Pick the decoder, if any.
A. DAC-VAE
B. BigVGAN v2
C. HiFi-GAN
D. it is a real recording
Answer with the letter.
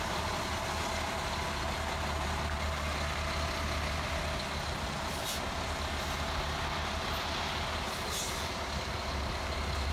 D